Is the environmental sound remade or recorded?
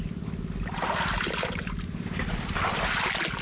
recorded